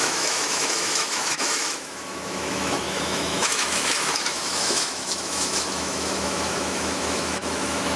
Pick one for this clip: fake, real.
fake